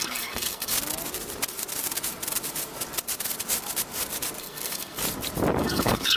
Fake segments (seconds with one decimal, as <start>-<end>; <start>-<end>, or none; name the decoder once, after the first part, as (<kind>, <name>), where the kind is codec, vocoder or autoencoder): 0.0-0.7 (codec, SNAC); 4.4-5.0; 5.6-6.2